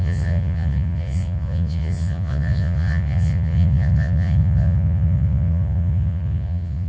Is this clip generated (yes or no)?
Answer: yes